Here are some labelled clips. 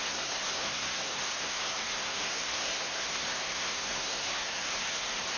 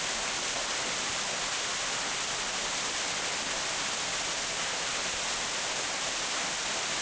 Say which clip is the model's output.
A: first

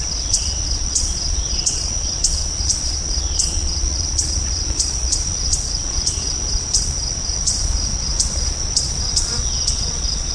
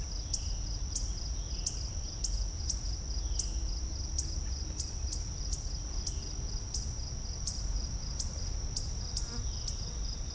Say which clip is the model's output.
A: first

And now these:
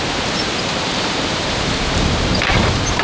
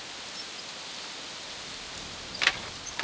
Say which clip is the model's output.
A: first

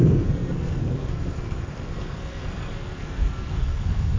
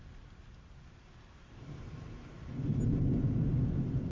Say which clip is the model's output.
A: first